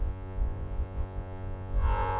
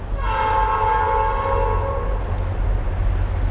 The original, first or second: second